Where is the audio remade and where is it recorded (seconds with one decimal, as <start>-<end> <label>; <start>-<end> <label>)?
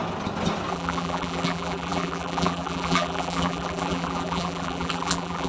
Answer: 0.0-0.7 recorded; 0.7-5.5 remade